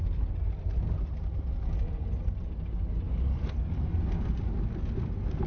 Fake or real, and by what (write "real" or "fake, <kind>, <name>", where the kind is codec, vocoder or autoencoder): real